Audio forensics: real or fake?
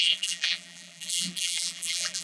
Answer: fake